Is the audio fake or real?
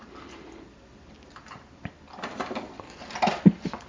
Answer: real